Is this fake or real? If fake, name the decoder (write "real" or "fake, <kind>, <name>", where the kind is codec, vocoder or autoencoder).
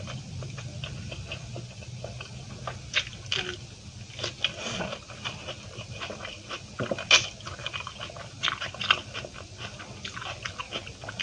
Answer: real